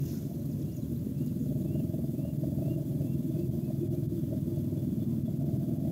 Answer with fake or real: real